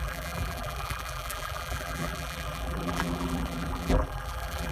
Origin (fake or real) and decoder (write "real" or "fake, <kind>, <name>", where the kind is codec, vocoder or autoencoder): fake, vocoder, BigVGAN v2